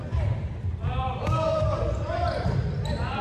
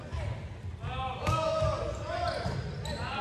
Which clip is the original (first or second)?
second